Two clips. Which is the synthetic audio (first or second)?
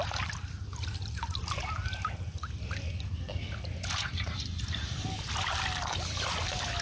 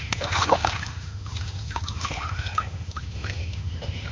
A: second